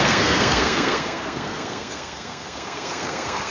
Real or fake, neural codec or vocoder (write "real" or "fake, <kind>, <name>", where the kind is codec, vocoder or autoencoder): fake, codec, SNAC